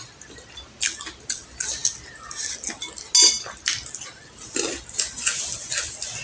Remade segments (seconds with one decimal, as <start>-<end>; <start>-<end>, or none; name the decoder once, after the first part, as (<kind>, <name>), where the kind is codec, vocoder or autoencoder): none